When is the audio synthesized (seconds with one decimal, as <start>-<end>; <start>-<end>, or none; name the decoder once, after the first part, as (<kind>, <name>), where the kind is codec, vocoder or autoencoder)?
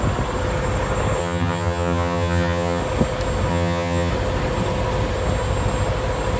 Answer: 1.2-2.8 (vocoder, HiFi-GAN); 3.5-4.1